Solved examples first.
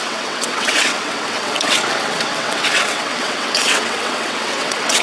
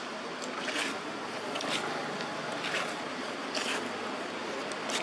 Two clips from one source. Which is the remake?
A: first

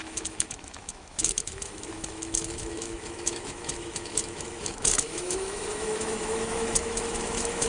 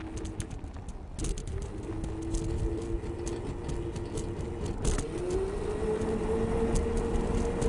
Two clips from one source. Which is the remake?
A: first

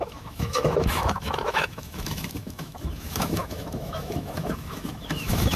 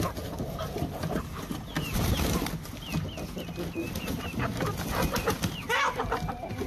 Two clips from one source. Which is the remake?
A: first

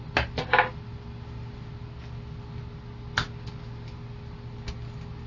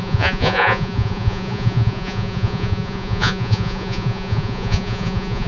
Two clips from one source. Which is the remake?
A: second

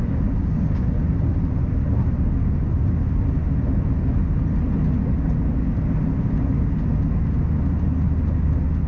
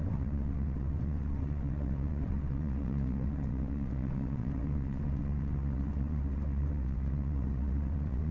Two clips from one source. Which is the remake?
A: second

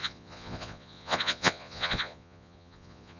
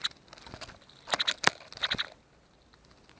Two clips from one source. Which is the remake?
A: first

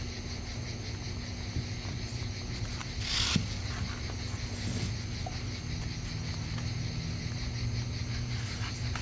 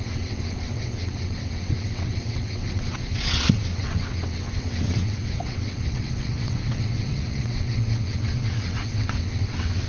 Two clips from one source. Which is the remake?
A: second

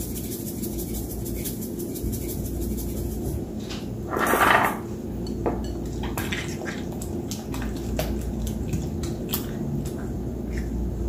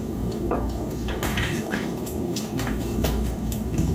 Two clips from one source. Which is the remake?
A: second